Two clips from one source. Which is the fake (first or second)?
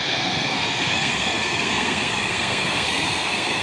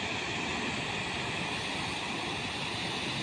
first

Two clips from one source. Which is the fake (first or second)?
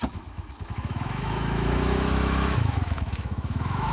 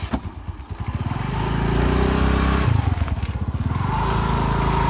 first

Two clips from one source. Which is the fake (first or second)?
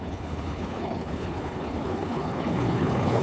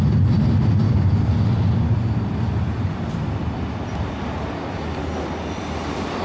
first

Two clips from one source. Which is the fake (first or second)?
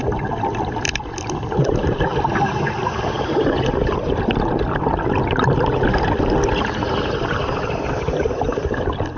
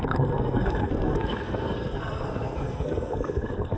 second